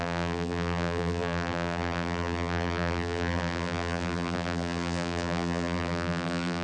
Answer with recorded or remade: remade